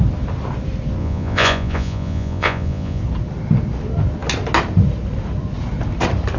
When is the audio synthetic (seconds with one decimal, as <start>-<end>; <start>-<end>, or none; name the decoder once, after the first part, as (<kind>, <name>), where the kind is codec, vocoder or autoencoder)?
1.0-3.0 (vocoder, Vocos)